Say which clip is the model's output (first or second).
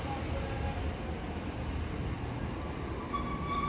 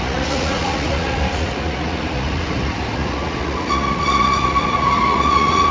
second